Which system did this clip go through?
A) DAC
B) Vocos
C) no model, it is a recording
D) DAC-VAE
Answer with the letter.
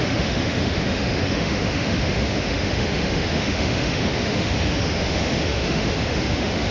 D